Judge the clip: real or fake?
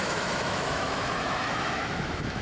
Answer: fake